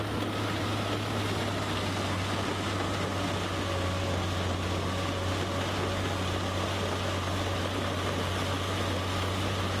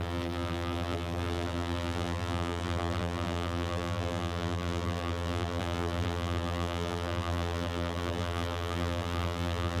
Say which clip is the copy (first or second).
second